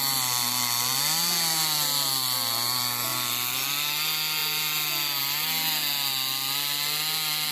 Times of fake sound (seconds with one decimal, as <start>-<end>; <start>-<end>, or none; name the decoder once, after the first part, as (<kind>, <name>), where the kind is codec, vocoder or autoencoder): none